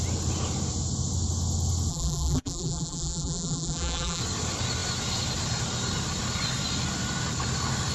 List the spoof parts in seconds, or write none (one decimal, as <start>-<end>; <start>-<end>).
1.9-4.2